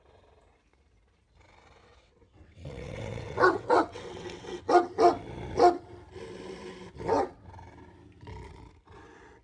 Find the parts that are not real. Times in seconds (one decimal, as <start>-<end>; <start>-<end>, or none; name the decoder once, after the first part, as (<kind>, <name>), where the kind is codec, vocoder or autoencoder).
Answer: 1.8-4.7 (vocoder, WaveNeXt)